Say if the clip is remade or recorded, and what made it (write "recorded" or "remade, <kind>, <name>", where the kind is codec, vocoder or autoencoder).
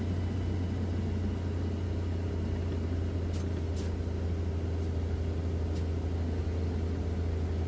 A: recorded